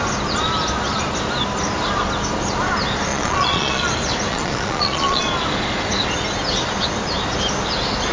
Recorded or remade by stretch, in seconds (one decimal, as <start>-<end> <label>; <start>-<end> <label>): 0.0-3.1 recorded; 3.1-3.9 remade; 3.9-4.3 recorded; 4.3-5.2 remade; 5.2-8.1 recorded